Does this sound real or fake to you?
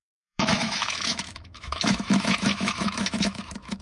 fake